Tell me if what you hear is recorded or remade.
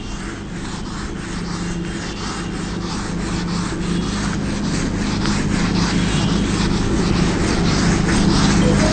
recorded